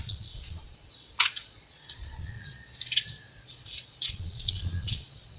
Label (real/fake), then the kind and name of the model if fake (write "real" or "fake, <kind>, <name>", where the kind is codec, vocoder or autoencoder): fake, vocoder, Vocos